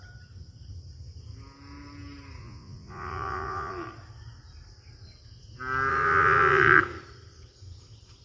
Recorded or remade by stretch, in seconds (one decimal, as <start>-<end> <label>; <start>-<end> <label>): 0.0-2.4 recorded; 2.4-3.7 remade; 3.7-5.9 recorded; 5.9-6.8 remade; 6.8-8.2 recorded